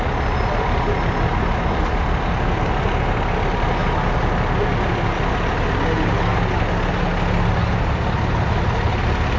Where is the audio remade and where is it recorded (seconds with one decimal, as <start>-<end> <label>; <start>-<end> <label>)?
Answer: 0.0-9.4 recorded